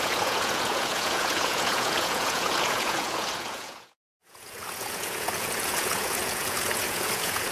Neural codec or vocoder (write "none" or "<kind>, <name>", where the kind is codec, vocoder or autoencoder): vocoder, Vocos